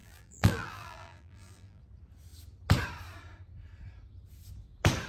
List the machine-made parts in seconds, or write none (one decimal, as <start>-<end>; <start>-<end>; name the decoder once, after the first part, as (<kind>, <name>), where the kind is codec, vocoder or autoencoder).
0.0-1.8 (vocoder, BigVGAN v2)